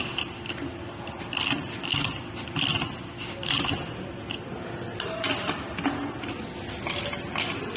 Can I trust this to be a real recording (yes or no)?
yes